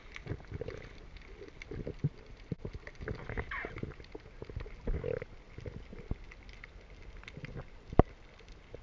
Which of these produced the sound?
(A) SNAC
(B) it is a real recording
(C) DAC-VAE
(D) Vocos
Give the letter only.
B